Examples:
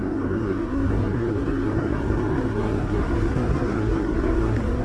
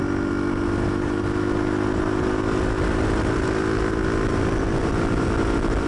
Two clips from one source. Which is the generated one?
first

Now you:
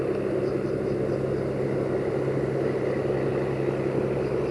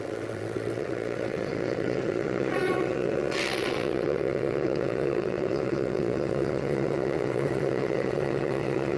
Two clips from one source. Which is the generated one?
second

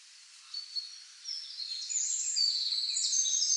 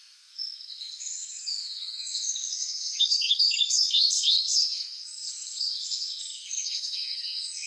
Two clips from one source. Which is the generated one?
second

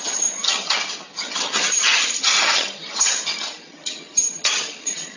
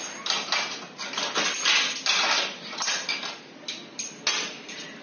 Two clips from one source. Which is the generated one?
first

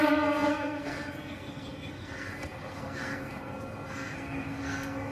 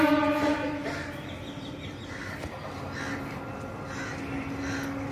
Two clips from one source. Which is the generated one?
first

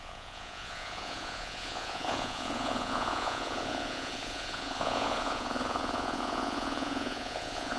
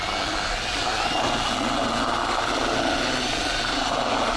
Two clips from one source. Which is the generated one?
first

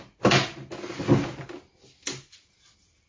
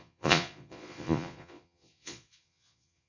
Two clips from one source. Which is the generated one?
second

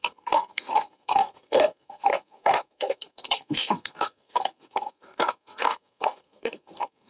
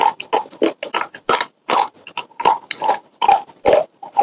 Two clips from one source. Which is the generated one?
first